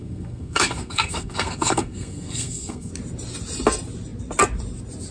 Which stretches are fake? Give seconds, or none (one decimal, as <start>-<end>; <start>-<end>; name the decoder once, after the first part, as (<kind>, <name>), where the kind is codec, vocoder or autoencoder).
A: 0.0-2.9 (codec, SNAC)